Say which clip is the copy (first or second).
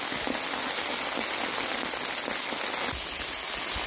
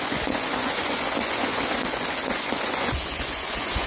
second